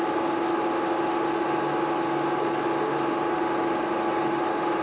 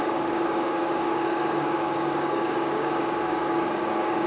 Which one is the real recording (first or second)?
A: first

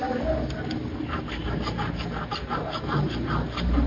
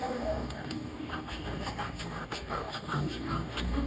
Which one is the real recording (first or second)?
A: first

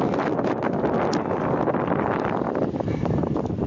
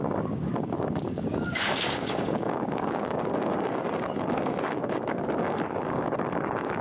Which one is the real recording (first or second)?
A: first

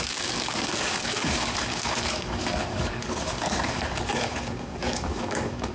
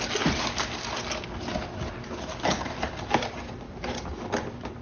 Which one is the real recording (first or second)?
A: second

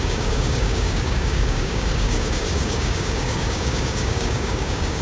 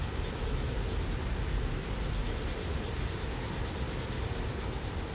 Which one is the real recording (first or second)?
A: second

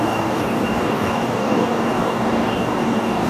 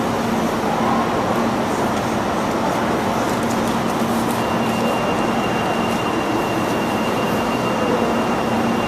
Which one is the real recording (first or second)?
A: second